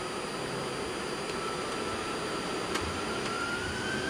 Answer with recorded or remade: recorded